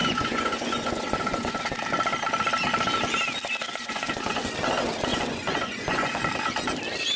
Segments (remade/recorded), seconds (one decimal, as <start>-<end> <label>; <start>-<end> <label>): 0.0-1.6 remade; 1.6-3.7 recorded; 3.7-4.5 remade; 4.5-5.1 recorded; 5.1-6.2 remade; 6.2-7.2 recorded